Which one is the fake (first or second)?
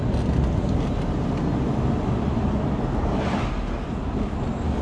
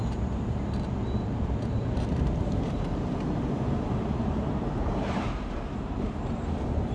second